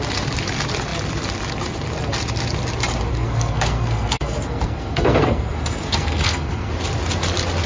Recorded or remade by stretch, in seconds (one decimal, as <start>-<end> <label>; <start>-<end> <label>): 0.0-3.1 recorded; 3.1-6.7 remade; 6.7-7.7 recorded

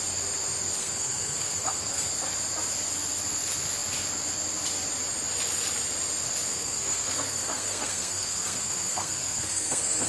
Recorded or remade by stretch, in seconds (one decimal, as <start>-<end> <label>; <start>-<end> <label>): 0.0-0.8 recorded; 0.8-2.1 remade; 2.1-6.5 recorded; 6.5-10.1 remade

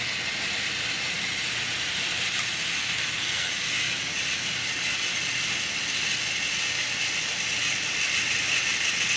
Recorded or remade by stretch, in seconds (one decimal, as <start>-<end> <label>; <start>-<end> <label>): 0.0-2.8 recorded; 2.8-3.5 remade; 3.5-9.2 recorded

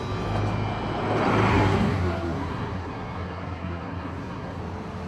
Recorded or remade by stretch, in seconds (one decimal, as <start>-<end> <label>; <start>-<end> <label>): 0.0-1.5 recorded; 1.5-4.6 remade; 4.6-5.1 recorded

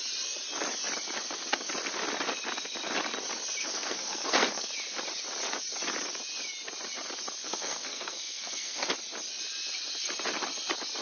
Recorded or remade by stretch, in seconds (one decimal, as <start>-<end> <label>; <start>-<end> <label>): 0.0-3.6 recorded; 3.6-4.7 remade; 4.7-7.4 recorded; 7.4-8.9 remade; 8.9-11.0 recorded

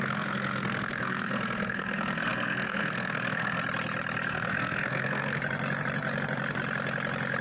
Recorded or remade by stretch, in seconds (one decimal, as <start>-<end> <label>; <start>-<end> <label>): 0.0-3.6 remade; 3.6-4.3 recorded; 4.3-5.4 remade; 5.4-7.4 recorded

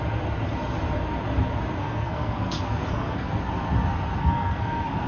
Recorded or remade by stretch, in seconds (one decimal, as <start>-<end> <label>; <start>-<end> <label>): 0.0-1.8 recorded; 1.8-3.4 remade; 3.4-4.2 recorded; 4.2-5.1 remade

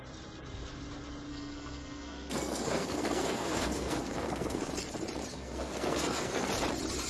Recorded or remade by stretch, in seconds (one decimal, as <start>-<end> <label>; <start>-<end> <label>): 0.0-1.3 recorded; 1.3-4.7 remade; 4.7-5.3 recorded; 5.3-6.5 remade; 6.5-7.1 recorded